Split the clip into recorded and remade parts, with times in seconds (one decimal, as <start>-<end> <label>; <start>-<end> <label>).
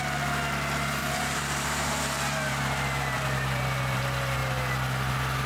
0.0-1.0 recorded; 1.0-4.0 remade; 4.0-5.5 recorded